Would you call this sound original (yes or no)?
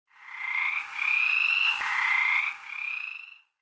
yes